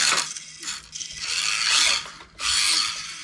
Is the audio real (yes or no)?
yes